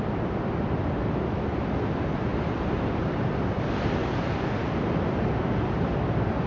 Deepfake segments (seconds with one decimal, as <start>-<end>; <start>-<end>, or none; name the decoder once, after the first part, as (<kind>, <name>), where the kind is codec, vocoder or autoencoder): none